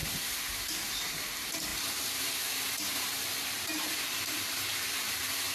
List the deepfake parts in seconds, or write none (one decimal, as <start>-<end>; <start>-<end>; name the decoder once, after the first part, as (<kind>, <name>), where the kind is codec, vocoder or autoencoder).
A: 0.0-5.5 (vocoder, BigVGAN v2)